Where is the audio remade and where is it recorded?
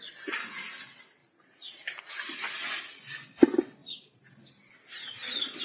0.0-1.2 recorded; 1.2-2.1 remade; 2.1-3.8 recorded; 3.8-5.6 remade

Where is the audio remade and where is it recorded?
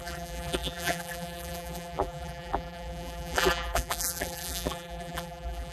0.0-5.7 remade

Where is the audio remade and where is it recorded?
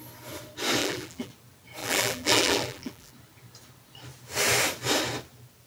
0.0-0.8 recorded; 0.8-1.3 remade; 1.3-1.8 recorded; 1.8-3.1 remade; 3.1-5.7 recorded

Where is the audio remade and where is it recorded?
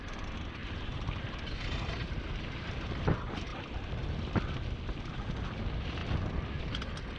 0.0-0.6 recorded; 0.6-3.1 remade; 3.1-7.2 recorded